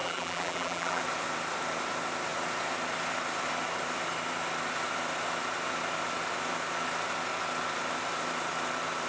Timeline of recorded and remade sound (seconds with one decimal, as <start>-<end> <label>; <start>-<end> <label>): 0.0-1.0 remade; 1.0-9.1 recorded